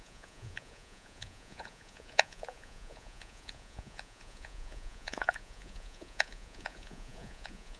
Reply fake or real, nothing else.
fake